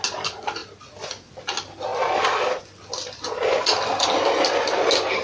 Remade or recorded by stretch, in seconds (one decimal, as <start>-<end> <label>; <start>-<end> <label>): 0.0-5.2 recorded